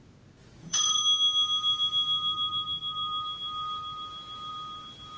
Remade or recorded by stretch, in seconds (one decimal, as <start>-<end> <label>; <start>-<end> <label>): 0.0-0.4 recorded; 0.4-1.0 remade; 1.0-5.2 recorded